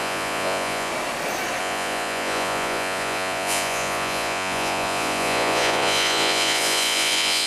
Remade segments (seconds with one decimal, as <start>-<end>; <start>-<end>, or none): 0.0-0.9; 1.6-7.5